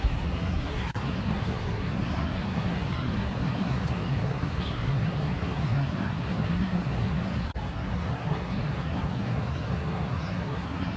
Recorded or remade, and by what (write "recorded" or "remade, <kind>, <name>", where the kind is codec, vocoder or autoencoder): remade, codec, SNAC